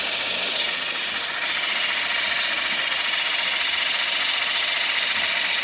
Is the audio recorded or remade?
recorded